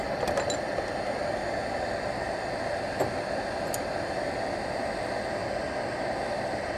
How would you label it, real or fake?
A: real